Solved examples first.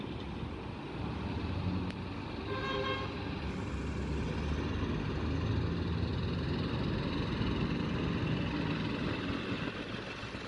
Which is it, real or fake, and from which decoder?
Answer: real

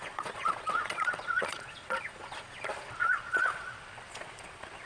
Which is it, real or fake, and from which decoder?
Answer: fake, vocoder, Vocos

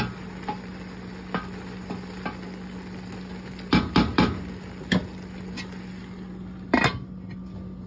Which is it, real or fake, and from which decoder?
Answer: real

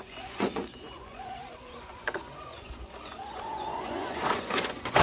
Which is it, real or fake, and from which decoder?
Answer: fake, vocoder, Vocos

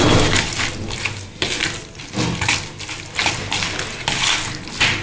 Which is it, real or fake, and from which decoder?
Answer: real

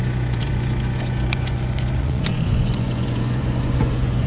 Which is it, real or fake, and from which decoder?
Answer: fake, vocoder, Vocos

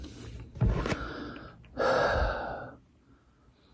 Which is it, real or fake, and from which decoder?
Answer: real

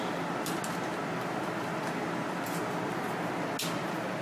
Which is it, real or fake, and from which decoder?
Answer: real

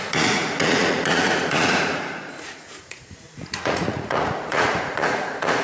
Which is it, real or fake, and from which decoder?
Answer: fake, vocoder, Vocos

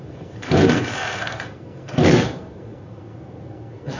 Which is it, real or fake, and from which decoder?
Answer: fake, codec, SNAC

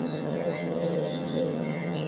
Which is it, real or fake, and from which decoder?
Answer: fake, vocoder, HiFi-GAN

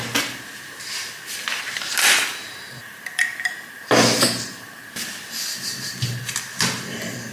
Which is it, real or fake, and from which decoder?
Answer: real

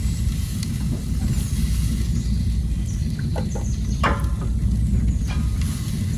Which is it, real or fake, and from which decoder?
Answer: real